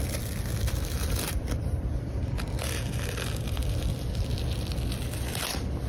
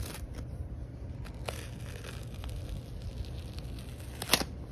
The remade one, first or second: first